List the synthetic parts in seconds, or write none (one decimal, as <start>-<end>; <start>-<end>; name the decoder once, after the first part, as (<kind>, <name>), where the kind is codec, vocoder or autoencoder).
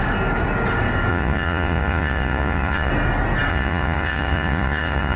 1.1-2.9 (vocoder, Vocos); 3.5-5.2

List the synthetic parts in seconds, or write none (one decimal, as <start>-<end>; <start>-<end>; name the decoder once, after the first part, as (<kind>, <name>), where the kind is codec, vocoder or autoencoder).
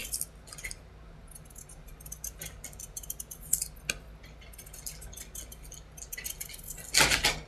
none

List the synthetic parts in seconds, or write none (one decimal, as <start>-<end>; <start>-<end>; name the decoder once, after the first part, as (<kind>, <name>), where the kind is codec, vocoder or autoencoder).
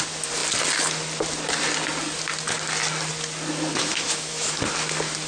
3.8-4.6 (autoencoder, DAC-VAE)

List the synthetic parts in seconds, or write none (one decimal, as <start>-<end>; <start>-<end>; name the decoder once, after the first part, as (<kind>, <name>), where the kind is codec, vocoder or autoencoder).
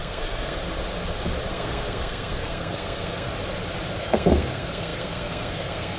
0.0-0.6 (codec, SNAC); 1.5-3.3; 4.0-6.0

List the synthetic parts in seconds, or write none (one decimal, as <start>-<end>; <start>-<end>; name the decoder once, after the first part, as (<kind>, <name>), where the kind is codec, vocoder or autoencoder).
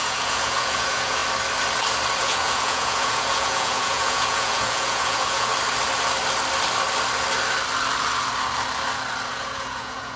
0.0-1.2 (vocoder, Vocos); 2.2-5.5; 9.3-10.2